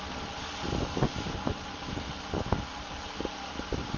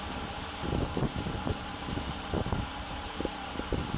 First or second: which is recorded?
first